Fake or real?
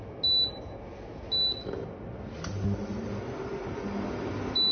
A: real